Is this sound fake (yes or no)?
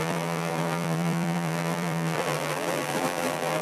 yes